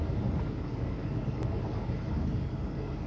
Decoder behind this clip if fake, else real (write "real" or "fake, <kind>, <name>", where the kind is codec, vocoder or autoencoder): fake, codec, DAC